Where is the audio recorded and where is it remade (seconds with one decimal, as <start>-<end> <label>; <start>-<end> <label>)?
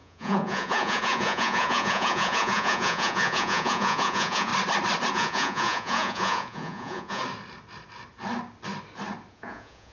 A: 0.0-4.5 remade; 4.5-5.1 recorded; 5.1-7.2 remade; 7.2-9.3 recorded; 9.3-9.9 remade